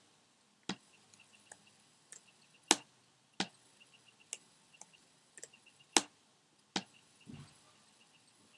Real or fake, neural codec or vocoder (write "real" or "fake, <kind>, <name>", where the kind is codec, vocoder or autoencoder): real